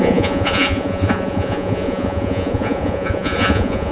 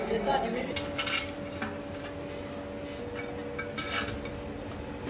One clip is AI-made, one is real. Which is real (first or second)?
second